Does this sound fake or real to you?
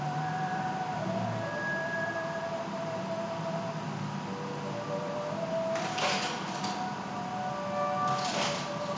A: real